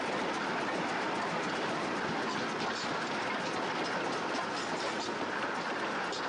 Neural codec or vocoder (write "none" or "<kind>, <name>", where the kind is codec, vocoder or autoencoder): none